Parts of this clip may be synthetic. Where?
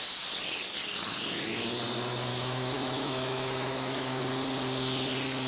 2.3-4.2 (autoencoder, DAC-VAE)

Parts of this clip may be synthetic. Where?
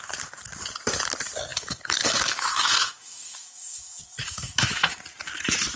1.5-5.0 (autoencoder, DAC-VAE)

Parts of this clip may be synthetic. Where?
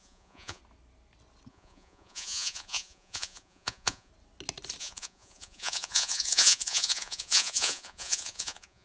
0.0-0.6 (vocoder, Vocos); 1.5-4.1; 4.8-8.8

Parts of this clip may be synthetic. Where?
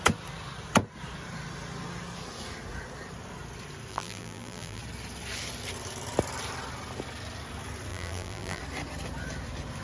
3.9-4.8 (vocoder, BigVGAN v2); 7.9-8.6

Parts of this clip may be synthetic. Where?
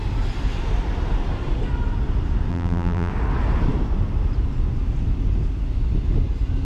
2.5-3.1 (vocoder, BigVGAN v2)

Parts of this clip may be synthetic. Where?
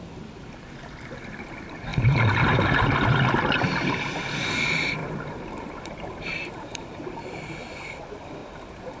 1.9-3.3 (vocoder, BigVGAN v2); 5.0-7.2; 8.4-9.0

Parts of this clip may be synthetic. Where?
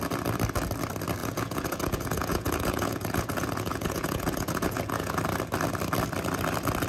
1.2-5.2 (vocoder, Vocos)